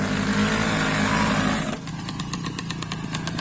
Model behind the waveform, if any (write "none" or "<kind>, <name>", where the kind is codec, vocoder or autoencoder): none